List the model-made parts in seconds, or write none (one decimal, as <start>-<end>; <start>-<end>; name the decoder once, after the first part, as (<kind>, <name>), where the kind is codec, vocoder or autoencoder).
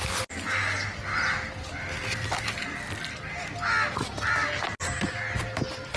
none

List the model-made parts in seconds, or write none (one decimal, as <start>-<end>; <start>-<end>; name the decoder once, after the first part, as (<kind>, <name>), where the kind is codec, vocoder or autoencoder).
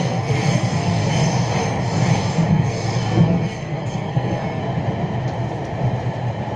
0.0-1.0 (codec, SNAC); 2.5-4.6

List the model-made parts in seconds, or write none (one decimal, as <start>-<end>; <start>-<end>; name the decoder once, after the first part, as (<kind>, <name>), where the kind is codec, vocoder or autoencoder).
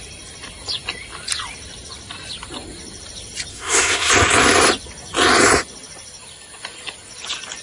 3.5-4.1 (codec, SNAC)